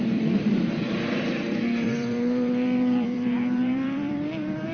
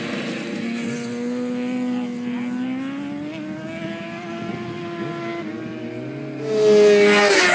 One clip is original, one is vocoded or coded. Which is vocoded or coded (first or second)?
first